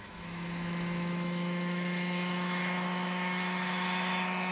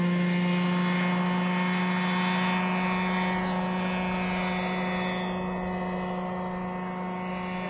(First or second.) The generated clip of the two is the first